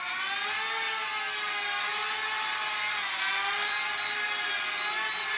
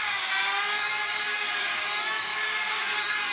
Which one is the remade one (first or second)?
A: second